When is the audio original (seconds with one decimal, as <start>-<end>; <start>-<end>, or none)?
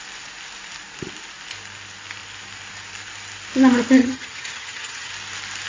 0.0-4.0; 5.1-5.7